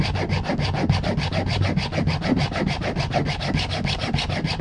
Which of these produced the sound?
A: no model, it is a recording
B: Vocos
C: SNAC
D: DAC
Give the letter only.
A